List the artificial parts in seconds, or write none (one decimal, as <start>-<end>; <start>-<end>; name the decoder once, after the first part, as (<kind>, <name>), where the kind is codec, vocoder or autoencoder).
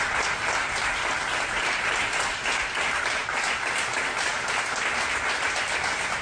none